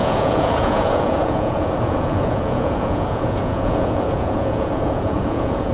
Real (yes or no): no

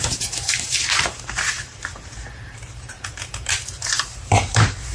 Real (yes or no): no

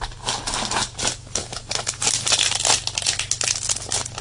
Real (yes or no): yes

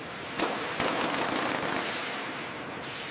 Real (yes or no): yes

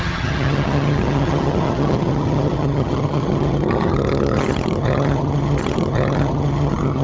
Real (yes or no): no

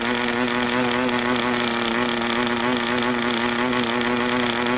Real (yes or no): yes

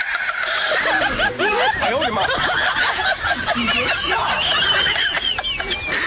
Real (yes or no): yes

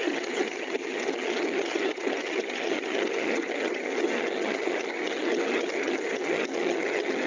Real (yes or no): no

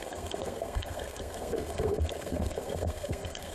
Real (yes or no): no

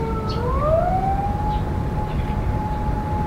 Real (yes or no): yes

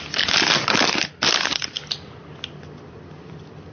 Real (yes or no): yes